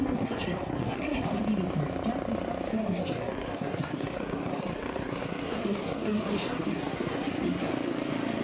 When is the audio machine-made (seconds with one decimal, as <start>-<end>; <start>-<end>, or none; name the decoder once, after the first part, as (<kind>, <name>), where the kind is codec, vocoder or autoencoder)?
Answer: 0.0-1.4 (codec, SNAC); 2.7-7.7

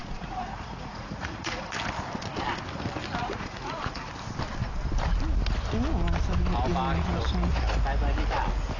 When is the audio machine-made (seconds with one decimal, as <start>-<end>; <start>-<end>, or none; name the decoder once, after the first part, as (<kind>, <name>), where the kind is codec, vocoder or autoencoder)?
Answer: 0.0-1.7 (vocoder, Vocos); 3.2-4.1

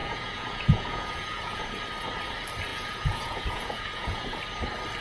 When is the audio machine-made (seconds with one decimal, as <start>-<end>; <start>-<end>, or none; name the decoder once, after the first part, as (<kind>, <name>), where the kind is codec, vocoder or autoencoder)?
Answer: 0.0-1.8 (vocoder, Vocos); 2.7-4.4